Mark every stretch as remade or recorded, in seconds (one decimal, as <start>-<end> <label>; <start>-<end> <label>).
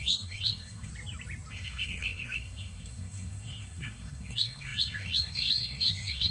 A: 0.0-0.9 remade; 0.9-1.5 recorded; 1.5-6.3 remade